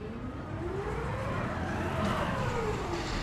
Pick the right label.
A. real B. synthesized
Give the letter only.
A